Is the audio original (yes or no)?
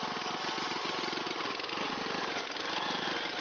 yes